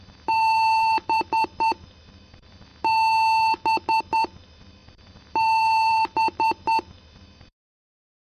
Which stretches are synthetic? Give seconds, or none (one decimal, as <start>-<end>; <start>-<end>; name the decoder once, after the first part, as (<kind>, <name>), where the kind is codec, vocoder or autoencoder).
0.0-2.7 (vocoder, BigVGAN v2); 4.0-8.4